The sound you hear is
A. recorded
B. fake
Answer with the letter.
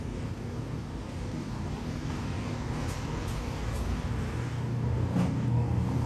B